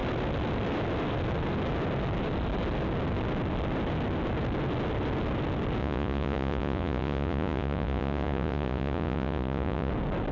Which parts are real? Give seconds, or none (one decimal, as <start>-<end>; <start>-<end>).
0.0-5.8; 9.9-10.3